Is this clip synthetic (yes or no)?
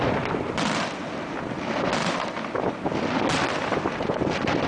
no